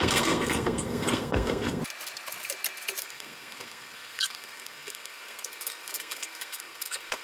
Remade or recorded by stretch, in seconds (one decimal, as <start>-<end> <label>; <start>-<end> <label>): 0.0-1.8 remade; 1.8-3.0 recorded; 3.0-7.2 remade